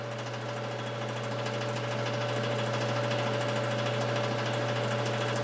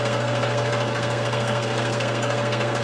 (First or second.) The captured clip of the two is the first